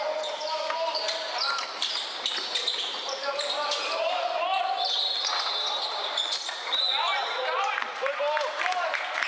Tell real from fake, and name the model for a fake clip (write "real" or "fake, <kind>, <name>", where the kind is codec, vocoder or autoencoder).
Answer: fake, vocoder, BigVGAN v2